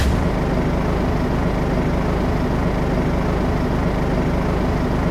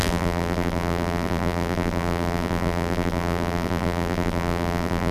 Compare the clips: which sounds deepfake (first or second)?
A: second